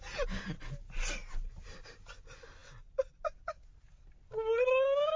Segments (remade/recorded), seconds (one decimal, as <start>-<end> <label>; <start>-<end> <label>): 0.0-5.2 recorded